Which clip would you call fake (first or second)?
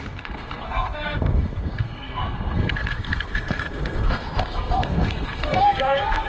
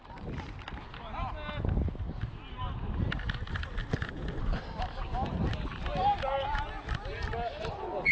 first